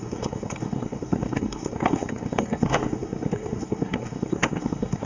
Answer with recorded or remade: remade